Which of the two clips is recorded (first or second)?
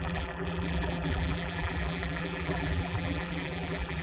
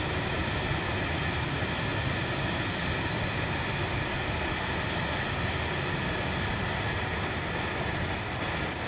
second